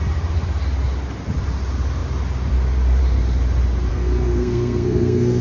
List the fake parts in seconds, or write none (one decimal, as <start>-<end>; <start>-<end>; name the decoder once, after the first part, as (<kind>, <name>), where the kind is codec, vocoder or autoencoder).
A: 3.9-5.4 (codec, SNAC)